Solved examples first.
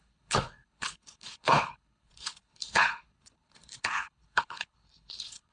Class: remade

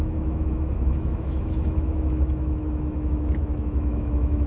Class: remade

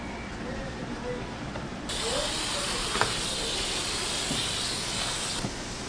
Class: recorded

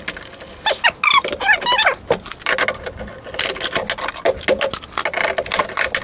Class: recorded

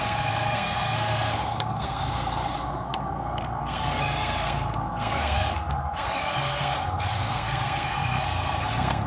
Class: remade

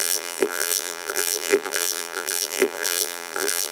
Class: remade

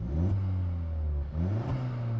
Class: recorded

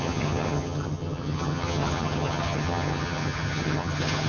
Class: remade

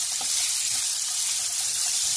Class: recorded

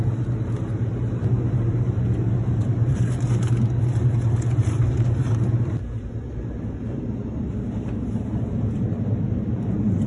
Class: remade